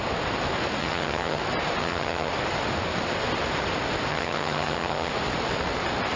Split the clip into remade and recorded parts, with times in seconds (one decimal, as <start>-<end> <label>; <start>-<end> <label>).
0.0-0.8 recorded; 0.8-1.4 remade; 1.4-1.8 recorded; 1.8-2.3 remade; 2.3-4.1 recorded; 4.1-5.1 remade; 5.1-6.2 recorded